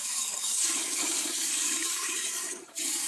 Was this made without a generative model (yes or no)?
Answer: no